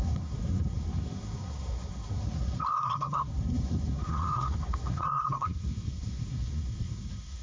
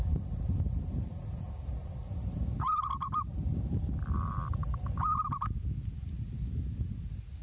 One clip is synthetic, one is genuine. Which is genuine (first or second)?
second